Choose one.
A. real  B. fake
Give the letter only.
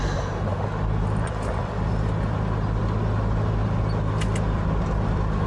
A